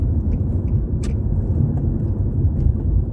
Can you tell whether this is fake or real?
fake